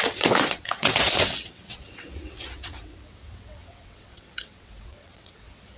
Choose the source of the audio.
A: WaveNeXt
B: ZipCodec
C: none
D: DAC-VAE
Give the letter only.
A